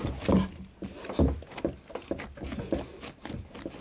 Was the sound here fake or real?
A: real